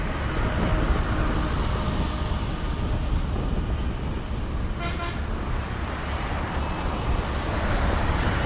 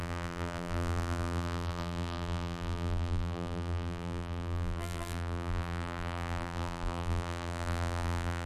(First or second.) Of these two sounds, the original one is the first